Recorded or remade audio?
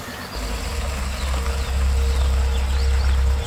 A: recorded